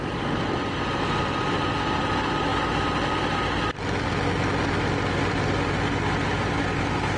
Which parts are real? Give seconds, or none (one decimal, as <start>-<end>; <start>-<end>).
0.0-7.2